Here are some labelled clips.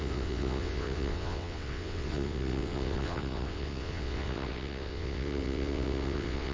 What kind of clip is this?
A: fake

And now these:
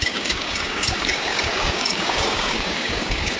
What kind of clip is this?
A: fake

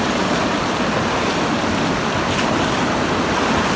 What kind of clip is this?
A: real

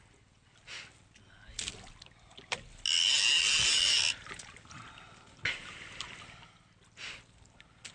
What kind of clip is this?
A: real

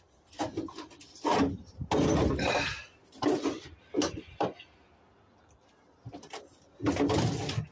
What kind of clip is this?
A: real